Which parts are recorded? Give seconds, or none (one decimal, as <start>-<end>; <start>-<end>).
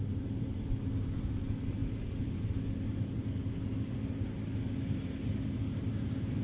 1.8-5.6